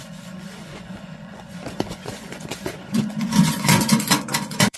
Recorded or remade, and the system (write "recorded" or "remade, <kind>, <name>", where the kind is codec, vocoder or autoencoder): remade, vocoder, Vocos